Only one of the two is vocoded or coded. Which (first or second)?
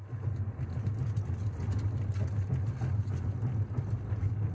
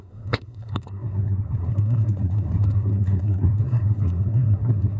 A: second